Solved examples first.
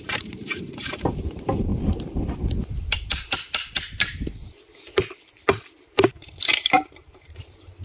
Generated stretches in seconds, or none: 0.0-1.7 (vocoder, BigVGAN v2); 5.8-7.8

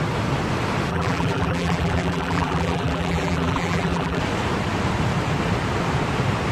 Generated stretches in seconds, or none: 0.9-4.2 (vocoder, BigVGAN v2)

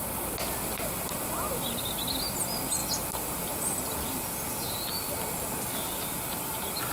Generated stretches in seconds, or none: none

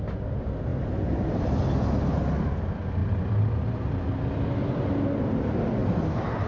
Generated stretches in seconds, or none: 5.8-6.5 (vocoder, BigVGAN v2)